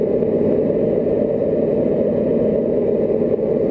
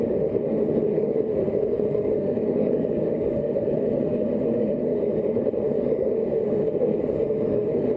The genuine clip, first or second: first